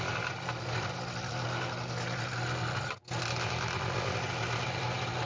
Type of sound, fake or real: real